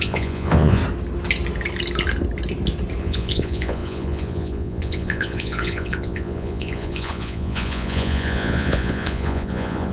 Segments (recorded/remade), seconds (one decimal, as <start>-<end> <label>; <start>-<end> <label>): 0.0-0.8 remade; 0.8-3.0 recorded; 3.0-9.9 remade